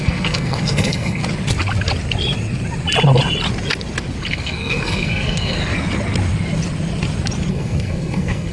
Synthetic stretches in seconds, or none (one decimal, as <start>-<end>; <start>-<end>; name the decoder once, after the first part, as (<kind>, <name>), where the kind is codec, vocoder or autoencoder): 0.0-1.2 (codec, SNAC); 4.3-5.6; 7.5-8.5